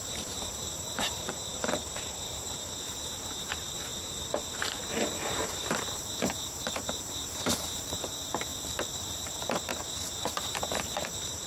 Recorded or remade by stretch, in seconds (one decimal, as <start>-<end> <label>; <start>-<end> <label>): 0.0-8.5 remade; 8.5-9.0 recorded; 9.0-9.7 remade; 9.7-10.5 recorded; 10.5-11.5 remade